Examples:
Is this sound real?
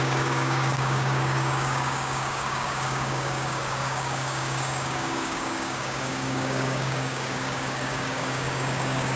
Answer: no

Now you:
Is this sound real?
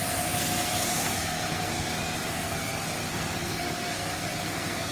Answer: no